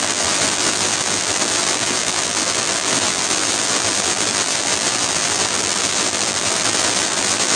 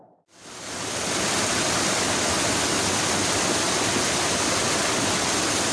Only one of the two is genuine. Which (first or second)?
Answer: second